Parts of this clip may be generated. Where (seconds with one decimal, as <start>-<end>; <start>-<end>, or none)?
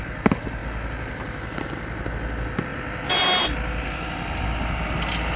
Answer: 0.6-2.1; 2.7-3.9